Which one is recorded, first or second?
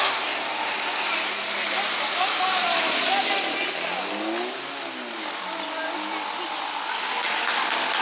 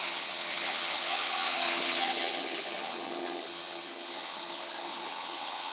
first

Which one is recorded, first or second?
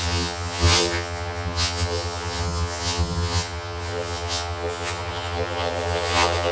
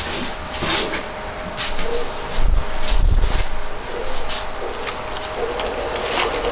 second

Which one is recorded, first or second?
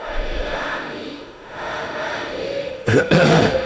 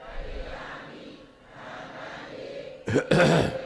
second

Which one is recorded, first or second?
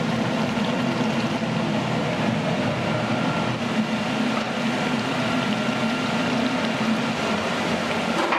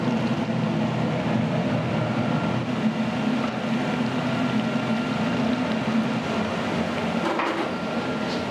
second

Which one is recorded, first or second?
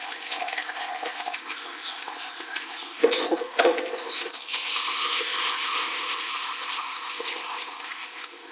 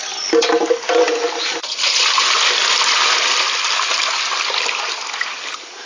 second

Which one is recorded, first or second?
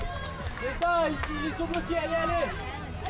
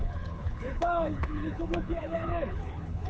first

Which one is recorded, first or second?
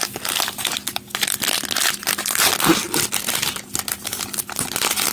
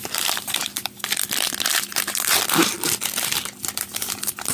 first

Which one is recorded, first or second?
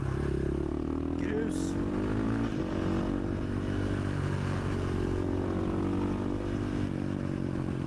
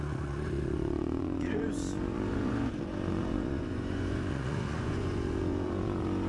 first